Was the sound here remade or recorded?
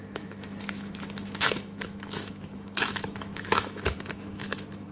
remade